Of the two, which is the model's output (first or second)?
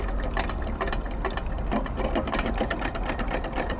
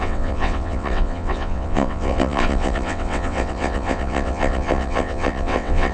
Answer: second